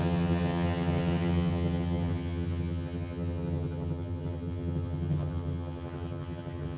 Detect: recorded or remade remade